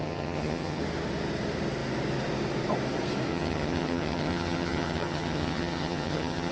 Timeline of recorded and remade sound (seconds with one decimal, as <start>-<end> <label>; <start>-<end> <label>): 0.0-0.8 remade; 0.8-3.3 recorded; 3.3-6.5 remade

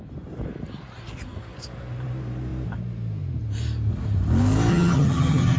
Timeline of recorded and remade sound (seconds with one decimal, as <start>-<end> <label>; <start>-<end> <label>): 0.0-4.7 recorded; 4.7-5.6 remade

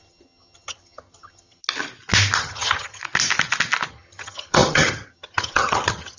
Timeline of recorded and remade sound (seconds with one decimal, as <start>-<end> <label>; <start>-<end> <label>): 0.0-1.6 remade; 1.6-2.4 recorded; 2.4-3.0 remade; 3.0-3.9 recorded; 3.9-6.2 remade

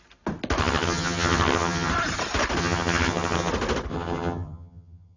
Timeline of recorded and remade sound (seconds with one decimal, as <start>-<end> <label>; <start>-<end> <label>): 0.0-0.6 recorded; 0.6-1.9 remade; 1.9-2.6 recorded; 2.6-3.5 remade; 3.5-3.9 recorded; 3.9-5.2 remade

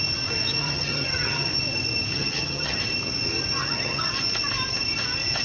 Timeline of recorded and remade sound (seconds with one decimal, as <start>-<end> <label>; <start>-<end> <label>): 0.0-0.6 recorded; 0.6-1.5 remade; 1.5-2.1 recorded; 2.1-2.8 remade; 2.8-3.6 recorded; 3.6-4.1 remade; 4.1-5.4 recorded